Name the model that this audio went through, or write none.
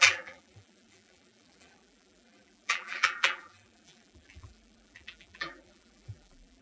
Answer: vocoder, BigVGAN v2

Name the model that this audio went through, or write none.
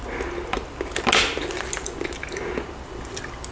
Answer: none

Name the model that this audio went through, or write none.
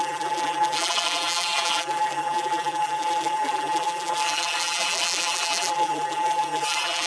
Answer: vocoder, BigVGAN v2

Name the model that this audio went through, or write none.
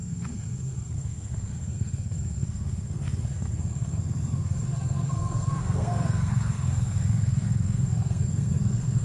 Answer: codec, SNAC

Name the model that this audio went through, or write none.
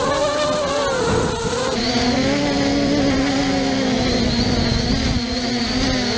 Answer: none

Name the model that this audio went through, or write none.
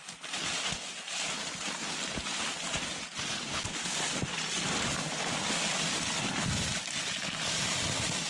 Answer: none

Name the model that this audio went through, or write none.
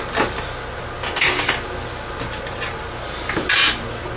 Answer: none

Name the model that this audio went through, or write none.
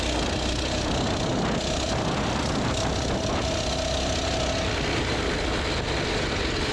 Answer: none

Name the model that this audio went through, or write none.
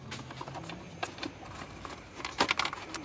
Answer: none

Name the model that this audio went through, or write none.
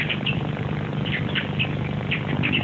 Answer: none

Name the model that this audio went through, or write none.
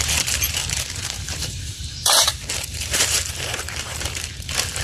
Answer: vocoder, BigVGAN v2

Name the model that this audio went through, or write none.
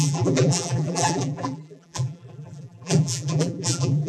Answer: vocoder, BigVGAN v2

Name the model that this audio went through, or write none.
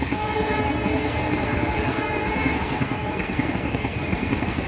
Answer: codec, SNAC